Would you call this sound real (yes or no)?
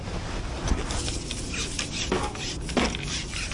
yes